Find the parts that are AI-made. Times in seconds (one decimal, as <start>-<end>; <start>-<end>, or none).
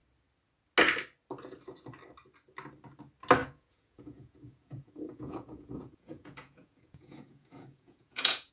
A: 3.4-8.5